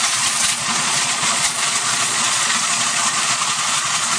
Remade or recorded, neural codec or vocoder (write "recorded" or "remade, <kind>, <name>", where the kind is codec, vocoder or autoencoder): remade, vocoder, Vocos